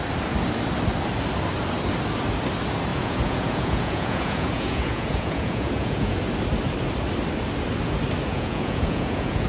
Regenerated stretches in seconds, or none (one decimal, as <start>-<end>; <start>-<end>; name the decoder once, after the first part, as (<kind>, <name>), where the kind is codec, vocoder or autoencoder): 2.9-6.2 (vocoder, Vocos); 8.3-9.5